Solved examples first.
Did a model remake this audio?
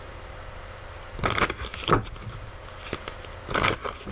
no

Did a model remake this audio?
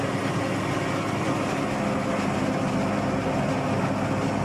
no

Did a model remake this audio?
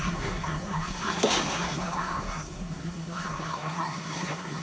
yes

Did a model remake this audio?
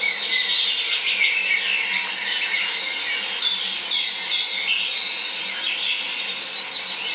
no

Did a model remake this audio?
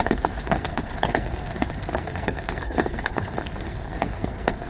yes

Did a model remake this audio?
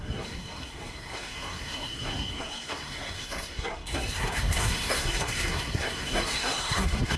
yes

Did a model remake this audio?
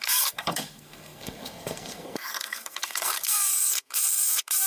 yes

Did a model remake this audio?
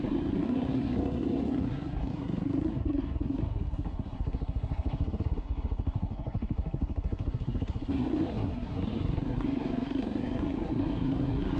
yes